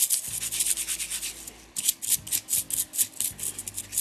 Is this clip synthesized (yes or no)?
no